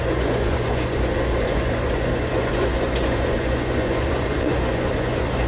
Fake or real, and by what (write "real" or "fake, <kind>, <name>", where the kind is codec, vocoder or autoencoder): fake, vocoder, Vocos